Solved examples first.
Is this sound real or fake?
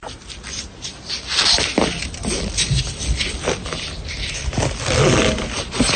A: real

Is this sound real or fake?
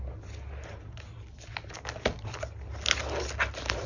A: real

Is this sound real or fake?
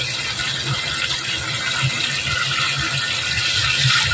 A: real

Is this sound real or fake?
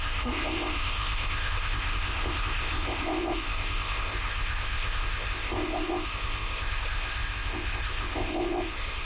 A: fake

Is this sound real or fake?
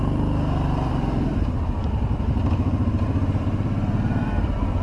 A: fake